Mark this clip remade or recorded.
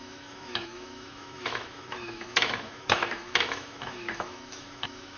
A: remade